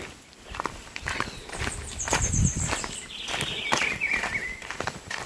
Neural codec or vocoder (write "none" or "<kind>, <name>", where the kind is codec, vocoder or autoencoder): vocoder, BigVGAN v2